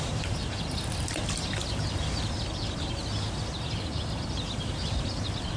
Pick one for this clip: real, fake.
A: real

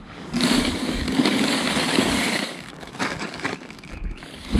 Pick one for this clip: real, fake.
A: fake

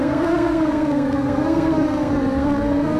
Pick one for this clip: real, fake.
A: fake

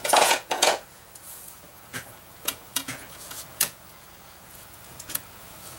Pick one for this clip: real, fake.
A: fake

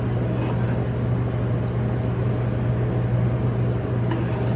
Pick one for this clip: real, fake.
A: real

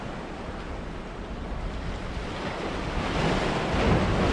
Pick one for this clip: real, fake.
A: real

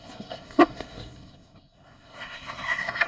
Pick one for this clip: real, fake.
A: fake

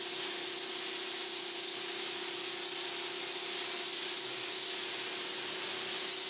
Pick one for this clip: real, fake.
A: real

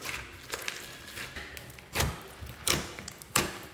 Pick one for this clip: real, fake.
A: real